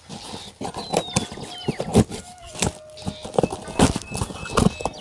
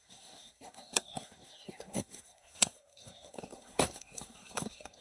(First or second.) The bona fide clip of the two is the first